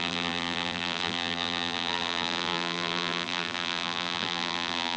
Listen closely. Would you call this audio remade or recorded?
remade